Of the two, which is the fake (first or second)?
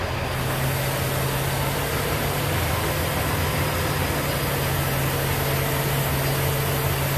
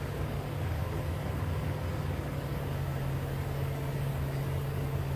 second